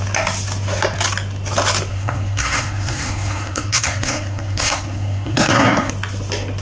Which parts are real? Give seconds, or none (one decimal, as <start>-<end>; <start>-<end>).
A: 0.0-1.9; 5.9-6.6